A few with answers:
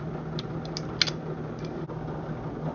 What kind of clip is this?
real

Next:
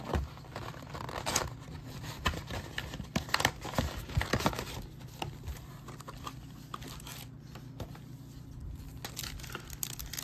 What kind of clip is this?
real